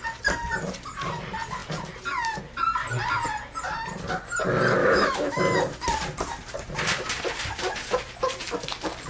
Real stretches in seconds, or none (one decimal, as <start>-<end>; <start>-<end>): 0.0-4.8; 5.4-9.1